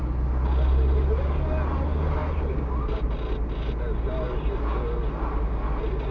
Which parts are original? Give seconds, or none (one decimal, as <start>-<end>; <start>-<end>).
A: 0.0-6.1